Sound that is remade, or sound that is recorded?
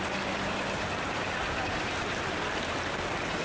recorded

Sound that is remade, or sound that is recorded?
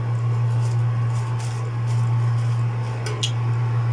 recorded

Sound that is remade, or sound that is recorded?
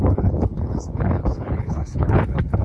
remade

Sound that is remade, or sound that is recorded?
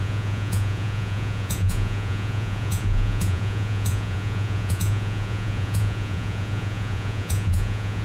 remade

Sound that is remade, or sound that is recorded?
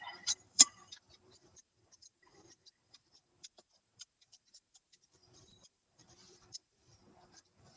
remade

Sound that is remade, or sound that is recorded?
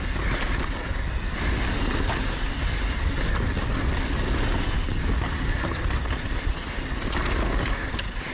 recorded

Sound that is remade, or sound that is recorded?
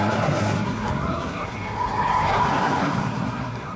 remade